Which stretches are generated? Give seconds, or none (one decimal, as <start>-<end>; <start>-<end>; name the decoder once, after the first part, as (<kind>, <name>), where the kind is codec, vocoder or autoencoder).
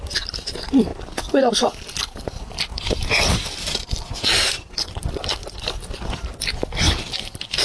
0.0-0.9 (vocoder, BigVGAN v2); 1.5-2.7; 3.3-6.3